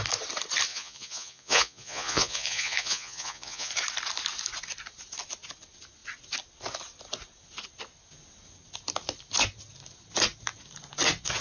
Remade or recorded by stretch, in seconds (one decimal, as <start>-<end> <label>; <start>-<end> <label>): 0.0-0.7 recorded; 0.7-3.7 remade; 3.7-11.4 recorded